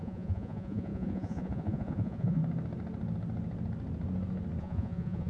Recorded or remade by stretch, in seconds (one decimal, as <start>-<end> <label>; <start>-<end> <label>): 0.0-2.4 remade; 2.4-4.6 recorded; 4.6-5.3 remade